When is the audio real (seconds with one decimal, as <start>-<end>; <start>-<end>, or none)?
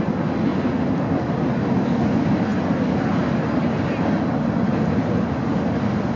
0.0-6.2